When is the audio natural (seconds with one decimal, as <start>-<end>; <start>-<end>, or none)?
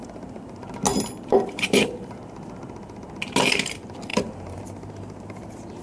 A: 0.0-0.9; 2.2-4.1; 4.6-5.8